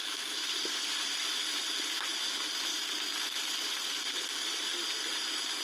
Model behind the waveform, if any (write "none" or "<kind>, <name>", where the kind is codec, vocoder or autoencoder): none